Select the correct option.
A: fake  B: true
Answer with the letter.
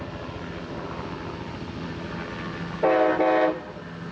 B